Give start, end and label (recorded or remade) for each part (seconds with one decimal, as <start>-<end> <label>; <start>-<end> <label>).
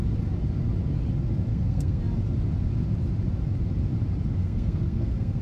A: 0.0-1.5 recorded; 1.5-2.0 remade; 2.0-4.4 recorded; 4.4-5.4 remade